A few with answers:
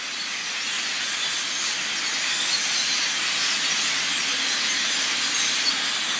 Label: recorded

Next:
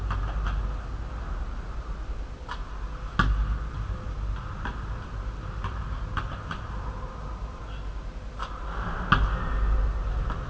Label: recorded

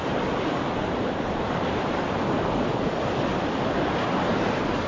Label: recorded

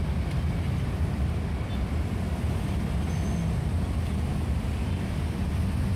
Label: recorded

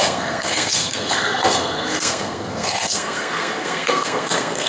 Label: remade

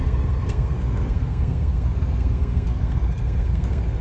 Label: remade